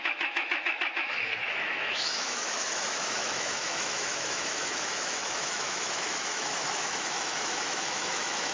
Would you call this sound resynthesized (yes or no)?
yes